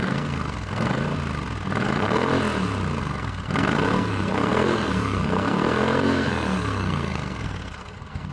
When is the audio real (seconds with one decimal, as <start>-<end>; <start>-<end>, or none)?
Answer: 1.1-1.8; 2.3-3.0